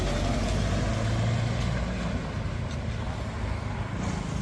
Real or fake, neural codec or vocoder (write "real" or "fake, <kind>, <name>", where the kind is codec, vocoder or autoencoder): real